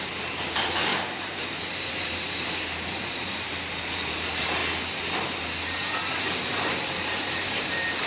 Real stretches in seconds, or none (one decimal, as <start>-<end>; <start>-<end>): 0.9-1.6; 4.6-6.2

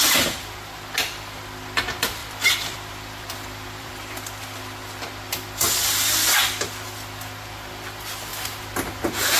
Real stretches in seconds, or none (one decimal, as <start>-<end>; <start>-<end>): 0.0-2.2; 3.9-9.4

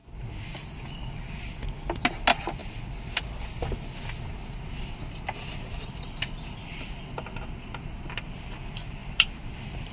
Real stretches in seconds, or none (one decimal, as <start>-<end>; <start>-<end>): 0.8-9.0

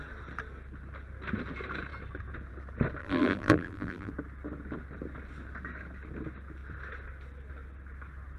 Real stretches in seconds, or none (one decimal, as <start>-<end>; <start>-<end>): 0.0-3.0; 4.1-8.4

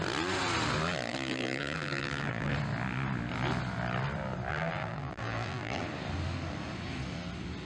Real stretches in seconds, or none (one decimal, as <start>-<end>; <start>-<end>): 0.0-1.1; 2.5-4.5; 5.8-7.7

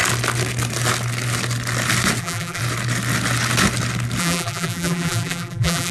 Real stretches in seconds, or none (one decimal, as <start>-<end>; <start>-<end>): 0.0-2.2; 2.6-4.2

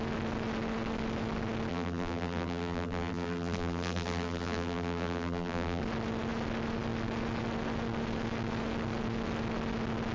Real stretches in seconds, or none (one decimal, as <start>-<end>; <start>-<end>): 0.0-1.7; 5.8-10.1